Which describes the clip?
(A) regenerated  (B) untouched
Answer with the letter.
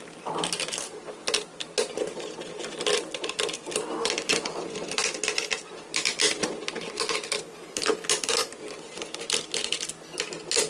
B